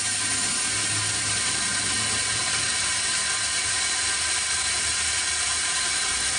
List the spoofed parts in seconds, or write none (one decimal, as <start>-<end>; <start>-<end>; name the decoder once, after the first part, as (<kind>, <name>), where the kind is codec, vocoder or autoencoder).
none